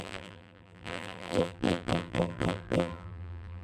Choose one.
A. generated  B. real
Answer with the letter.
A